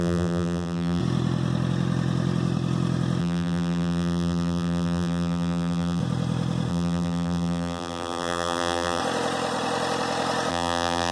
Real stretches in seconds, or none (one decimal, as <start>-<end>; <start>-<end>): 1.0-3.2; 6.0-6.7; 9.0-10.5